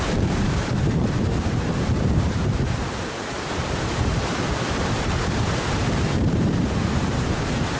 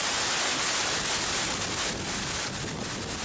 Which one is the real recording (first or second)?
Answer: second